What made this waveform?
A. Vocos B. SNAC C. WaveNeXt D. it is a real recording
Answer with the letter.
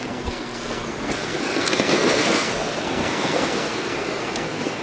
B